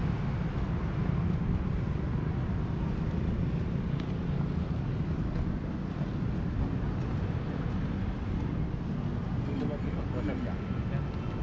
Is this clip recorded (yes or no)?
yes